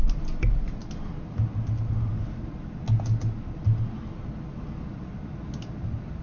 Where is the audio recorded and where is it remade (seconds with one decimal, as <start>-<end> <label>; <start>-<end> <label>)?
0.0-6.2 recorded